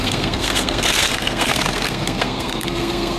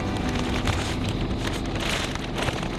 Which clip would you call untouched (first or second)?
second